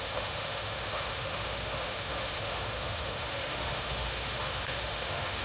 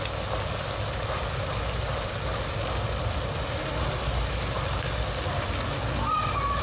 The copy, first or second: first